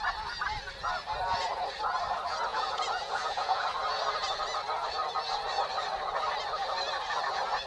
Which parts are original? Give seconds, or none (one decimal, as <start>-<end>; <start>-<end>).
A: 0.0-2.5; 3.6-7.7